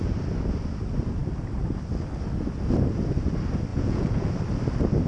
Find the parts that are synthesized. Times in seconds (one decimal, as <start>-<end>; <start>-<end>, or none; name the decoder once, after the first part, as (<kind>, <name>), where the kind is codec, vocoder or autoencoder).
3.7-4.3 (vocoder, Vocos)